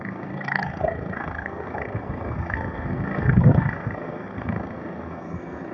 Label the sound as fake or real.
fake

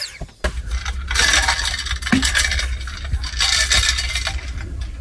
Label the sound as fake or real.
real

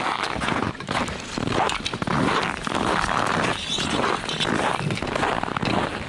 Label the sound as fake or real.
real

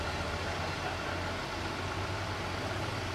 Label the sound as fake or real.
real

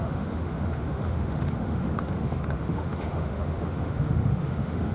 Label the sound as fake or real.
fake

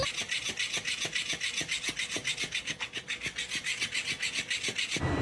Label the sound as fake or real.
real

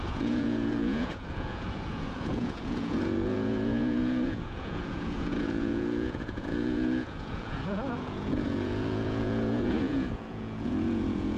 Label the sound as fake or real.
fake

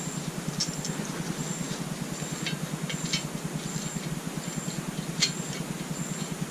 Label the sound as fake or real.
real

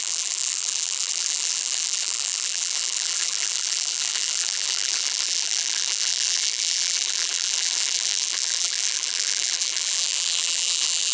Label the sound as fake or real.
fake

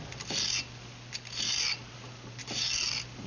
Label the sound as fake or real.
real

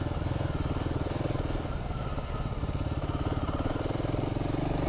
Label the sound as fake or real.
real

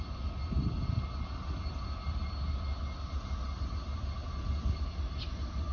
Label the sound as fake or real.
real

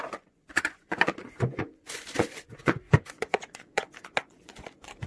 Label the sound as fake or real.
fake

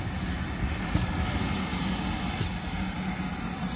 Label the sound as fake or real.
real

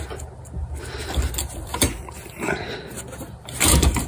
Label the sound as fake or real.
real